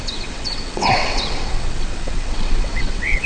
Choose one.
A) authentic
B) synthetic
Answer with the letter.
B